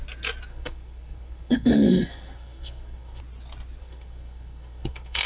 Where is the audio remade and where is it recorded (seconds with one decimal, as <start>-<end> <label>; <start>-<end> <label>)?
0.0-0.5 recorded; 0.5-3.2 remade; 3.2-3.8 recorded; 3.8-5.3 remade

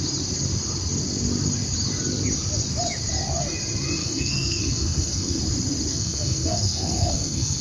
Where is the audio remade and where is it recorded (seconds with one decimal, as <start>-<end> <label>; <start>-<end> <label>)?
0.0-4.0 recorded; 4.0-5.4 remade; 5.4-5.9 recorded; 5.9-7.6 remade

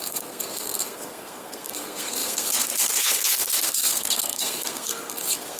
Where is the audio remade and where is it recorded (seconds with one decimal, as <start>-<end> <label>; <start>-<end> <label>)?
0.0-5.6 remade

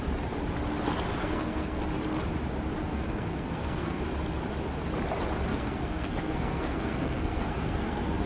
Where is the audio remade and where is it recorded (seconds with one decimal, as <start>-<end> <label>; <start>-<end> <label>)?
0.0-1.2 recorded; 1.2-1.8 remade; 1.8-2.8 recorded; 2.8-4.0 remade; 4.0-5.5 recorded; 5.5-8.3 remade

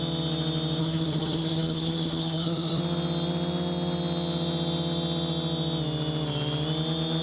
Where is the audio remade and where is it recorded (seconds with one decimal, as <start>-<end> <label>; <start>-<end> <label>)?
0.0-0.8 recorded; 0.8-2.8 remade; 2.8-7.2 recorded